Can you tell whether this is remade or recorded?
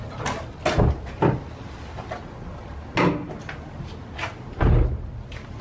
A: recorded